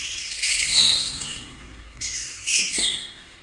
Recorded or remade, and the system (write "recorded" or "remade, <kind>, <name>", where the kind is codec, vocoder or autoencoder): remade, codec, SNAC